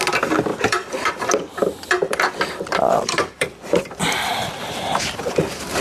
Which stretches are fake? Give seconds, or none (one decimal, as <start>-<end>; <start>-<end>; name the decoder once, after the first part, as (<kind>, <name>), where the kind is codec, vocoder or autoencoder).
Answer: 0.5-1.2 (vocoder, BigVGAN v2); 1.7-4.3